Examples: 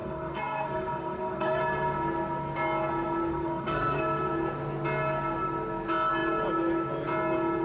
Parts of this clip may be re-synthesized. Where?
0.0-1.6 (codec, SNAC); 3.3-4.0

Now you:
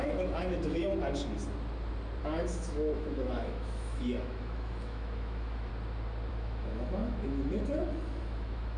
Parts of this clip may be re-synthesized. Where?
0.0-0.8 (autoencoder, DAC-VAE); 2.2-5.7; 6.3-8.8

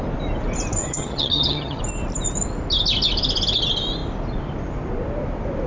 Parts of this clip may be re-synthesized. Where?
0.8-1.8 (vocoder, HiFi-GAN)

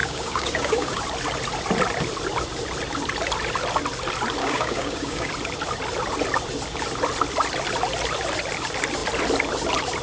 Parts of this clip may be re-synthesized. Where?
0.0-1.0 (codec, DAC); 4.4-5.3

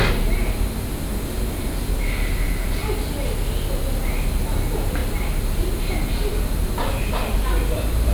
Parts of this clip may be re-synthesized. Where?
none

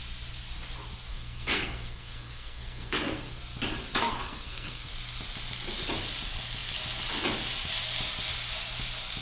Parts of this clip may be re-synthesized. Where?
1.1-3.4 (codec, SNAC); 4.0-4.9

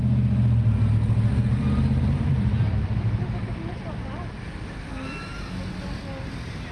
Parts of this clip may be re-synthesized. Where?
1.5-4.9 (vocoder, BigVGAN v2)

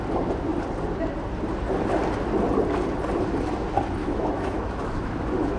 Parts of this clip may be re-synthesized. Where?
4.0-5.6 (autoencoder, DAC-VAE)